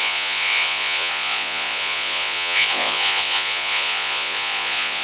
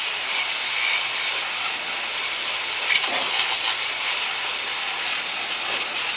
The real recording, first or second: second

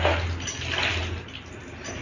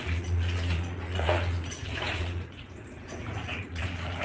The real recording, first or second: first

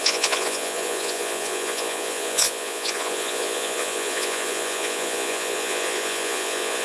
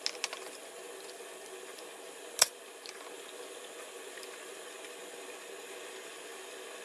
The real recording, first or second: second